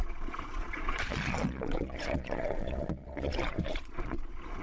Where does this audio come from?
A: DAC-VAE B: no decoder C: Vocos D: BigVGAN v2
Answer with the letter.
C